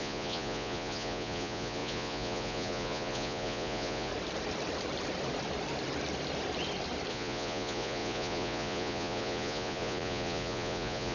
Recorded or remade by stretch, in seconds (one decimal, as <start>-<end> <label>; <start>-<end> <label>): 0.0-4.1 remade; 4.1-7.1 recorded; 7.1-11.1 remade